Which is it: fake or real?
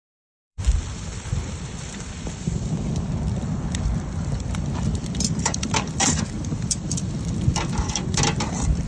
fake